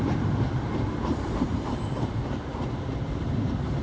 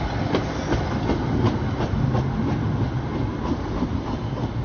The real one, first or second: second